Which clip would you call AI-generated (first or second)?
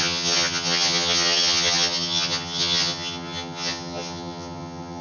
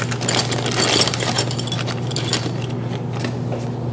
first